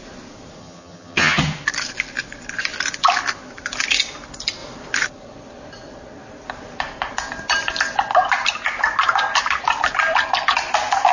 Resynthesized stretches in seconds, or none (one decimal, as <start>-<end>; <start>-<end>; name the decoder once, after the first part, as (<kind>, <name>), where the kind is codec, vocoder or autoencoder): 0.6-1.4 (vocoder, HiFi-GAN)